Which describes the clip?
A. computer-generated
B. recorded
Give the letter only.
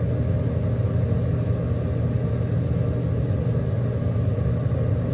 B